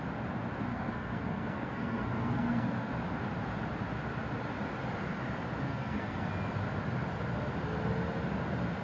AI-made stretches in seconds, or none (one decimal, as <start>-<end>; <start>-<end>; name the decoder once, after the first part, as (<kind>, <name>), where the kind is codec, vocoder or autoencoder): 0.7-2.9 (codec, SNAC); 5.7-6.3